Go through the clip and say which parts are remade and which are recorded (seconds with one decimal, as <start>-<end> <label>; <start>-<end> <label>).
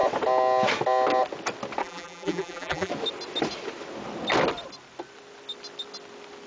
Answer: 0.0-1.8 recorded; 1.8-2.9 remade; 2.9-6.5 recorded